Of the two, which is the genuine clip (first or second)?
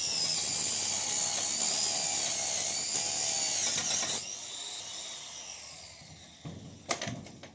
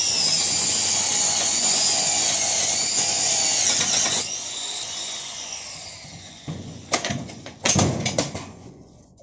first